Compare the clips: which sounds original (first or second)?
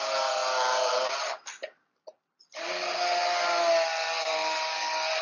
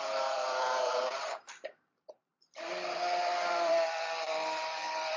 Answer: first